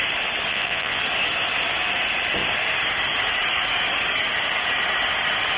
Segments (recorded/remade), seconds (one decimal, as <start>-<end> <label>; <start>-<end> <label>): 0.0-0.5 recorded; 0.5-1.0 remade; 1.0-5.6 recorded